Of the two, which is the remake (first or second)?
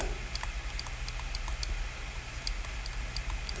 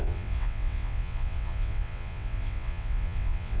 second